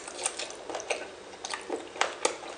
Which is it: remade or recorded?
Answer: recorded